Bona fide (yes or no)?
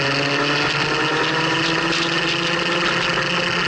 yes